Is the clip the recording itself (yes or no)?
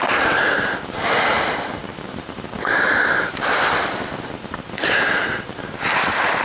no